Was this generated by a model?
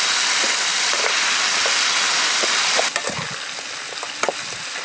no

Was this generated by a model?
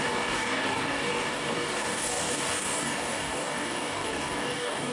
yes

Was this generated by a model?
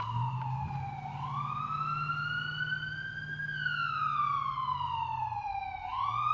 no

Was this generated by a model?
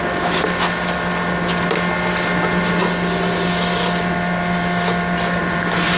no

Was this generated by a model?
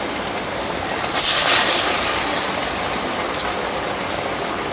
no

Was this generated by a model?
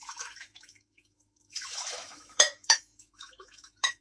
yes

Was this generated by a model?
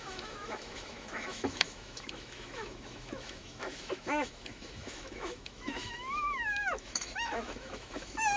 yes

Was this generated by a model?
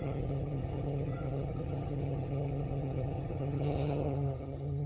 yes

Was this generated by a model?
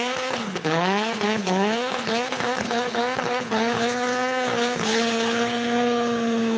yes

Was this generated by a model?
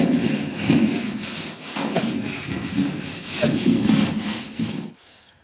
yes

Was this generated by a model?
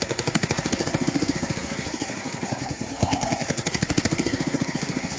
yes